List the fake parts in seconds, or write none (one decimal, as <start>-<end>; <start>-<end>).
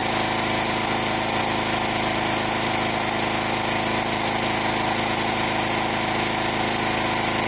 none